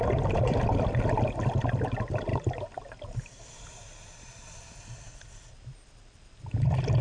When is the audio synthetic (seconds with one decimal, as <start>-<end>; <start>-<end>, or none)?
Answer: none